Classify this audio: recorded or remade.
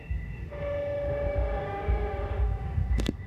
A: remade